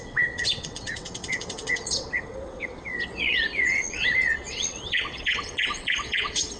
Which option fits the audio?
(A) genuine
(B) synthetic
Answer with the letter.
B